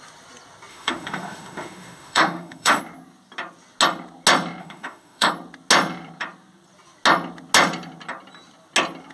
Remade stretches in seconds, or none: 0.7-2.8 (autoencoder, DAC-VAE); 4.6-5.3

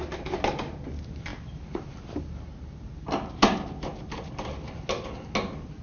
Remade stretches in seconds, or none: none

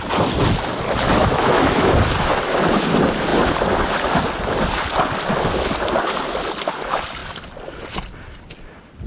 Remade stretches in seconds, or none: 1.2-1.9 (autoencoder, DAC-VAE)

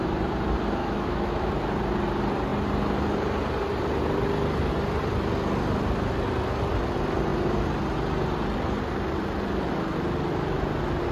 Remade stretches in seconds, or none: 0.8-1.5 (autoencoder, DAC-VAE)

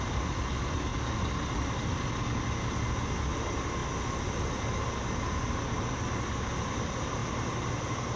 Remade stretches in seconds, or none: none

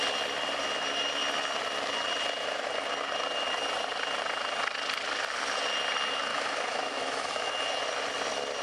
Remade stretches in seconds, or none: 6.3-7.5 (autoencoder, DAC-VAE)

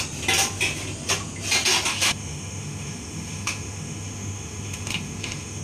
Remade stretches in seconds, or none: 1.9-5.6 (autoencoder, DAC-VAE)